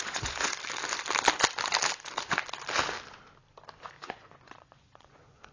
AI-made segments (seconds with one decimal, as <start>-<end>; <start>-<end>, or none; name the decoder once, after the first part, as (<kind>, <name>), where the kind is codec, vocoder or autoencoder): 0.0-0.5 (vocoder, Vocos); 3.8-5.5